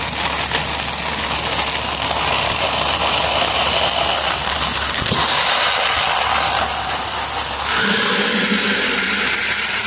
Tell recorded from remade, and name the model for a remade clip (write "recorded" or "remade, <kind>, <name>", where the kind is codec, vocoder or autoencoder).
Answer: recorded